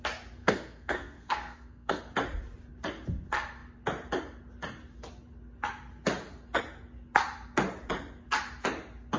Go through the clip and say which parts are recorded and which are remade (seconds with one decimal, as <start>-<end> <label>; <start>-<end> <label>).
0.0-0.4 recorded; 0.4-2.0 remade; 2.0-9.2 recorded